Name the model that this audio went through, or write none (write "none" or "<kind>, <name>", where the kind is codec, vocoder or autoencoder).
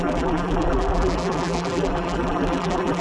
vocoder, BigVGAN v2